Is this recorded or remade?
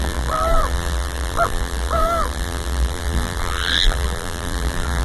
remade